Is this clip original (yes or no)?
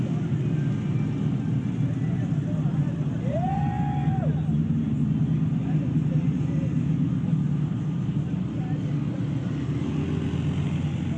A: yes